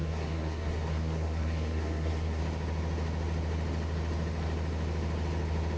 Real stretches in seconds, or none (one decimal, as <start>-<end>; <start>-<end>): 2.4-5.8